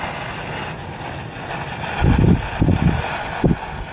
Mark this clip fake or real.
real